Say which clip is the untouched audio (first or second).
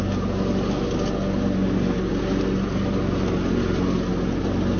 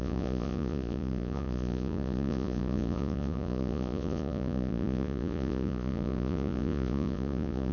first